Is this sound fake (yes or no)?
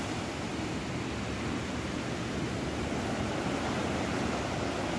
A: no